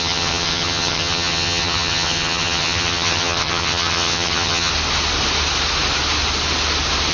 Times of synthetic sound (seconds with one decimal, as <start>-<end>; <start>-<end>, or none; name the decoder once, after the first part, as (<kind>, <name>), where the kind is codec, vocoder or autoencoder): 0.0-4.7 (vocoder, HiFi-GAN)